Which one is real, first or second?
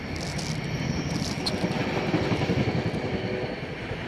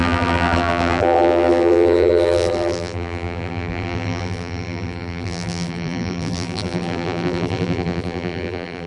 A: first